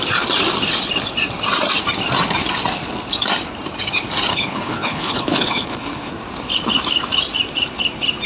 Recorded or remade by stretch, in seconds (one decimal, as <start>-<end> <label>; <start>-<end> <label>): 0.0-4.3 recorded; 4.3-6.1 remade; 6.1-8.3 recorded